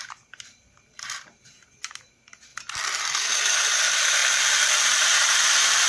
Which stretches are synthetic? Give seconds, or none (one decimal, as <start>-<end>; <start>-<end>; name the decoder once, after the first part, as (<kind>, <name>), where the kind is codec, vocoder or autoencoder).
0.0-2.5 (vocoder, BigVGAN v2); 3.0-4.2; 4.9-5.9